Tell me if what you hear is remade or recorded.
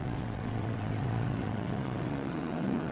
remade